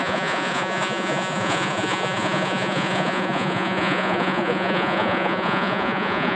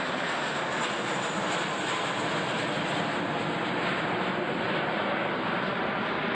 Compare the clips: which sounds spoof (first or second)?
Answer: first